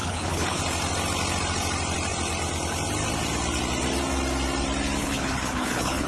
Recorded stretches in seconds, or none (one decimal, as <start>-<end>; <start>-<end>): 0.6-5.0